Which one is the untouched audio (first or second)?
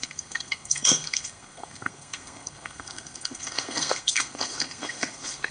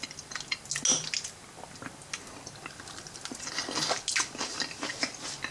second